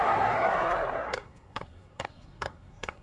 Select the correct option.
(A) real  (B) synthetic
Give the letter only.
B